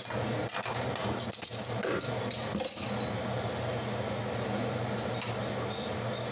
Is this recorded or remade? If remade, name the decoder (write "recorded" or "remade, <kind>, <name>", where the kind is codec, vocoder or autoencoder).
recorded